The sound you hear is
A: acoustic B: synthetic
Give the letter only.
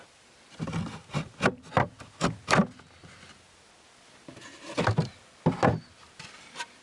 A